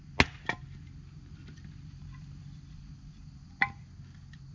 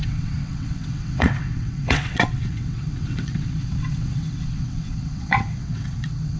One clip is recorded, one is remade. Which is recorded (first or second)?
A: first